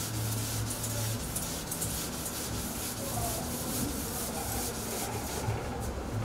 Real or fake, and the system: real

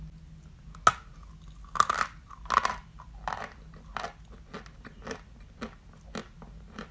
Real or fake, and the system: real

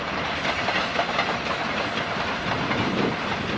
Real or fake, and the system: real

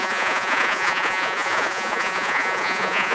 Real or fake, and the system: fake, vocoder, Vocos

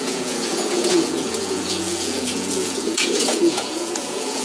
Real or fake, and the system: fake, vocoder, Vocos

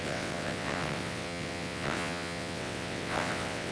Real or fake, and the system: fake, vocoder, WaveNeXt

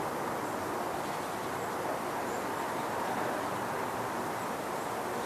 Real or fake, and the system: real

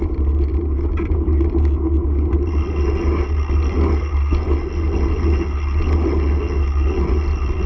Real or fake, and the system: real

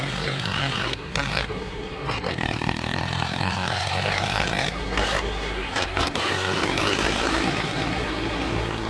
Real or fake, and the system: fake, codec, SNAC